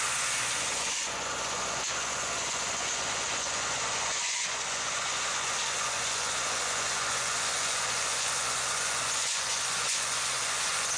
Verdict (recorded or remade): remade